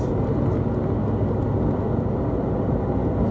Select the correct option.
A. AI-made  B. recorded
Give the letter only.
B